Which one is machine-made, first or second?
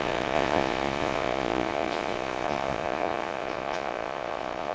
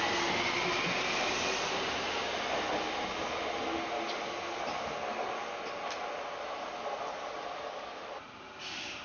first